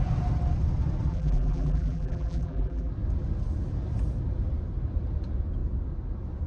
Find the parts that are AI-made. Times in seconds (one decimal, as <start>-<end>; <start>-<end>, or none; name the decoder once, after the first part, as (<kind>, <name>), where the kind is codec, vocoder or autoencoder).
1.1-2.9 (vocoder, BigVGAN v2)